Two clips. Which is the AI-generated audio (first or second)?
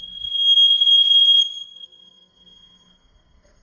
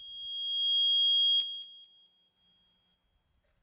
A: first